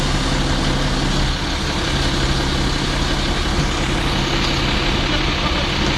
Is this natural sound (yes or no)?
yes